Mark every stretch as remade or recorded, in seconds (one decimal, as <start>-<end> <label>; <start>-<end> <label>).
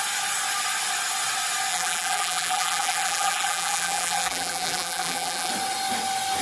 0.0-1.7 recorded; 1.7-5.5 remade; 5.5-6.4 recorded